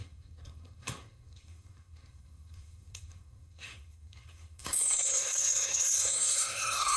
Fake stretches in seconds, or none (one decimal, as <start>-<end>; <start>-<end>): 0.0-7.0